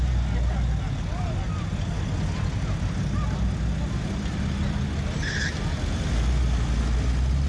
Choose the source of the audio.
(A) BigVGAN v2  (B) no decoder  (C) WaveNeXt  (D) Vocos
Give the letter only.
B